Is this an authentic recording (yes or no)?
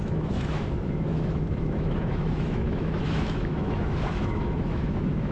no